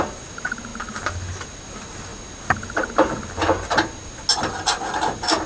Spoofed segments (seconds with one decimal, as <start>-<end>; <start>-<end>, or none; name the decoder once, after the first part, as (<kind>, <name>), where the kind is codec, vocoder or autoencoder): none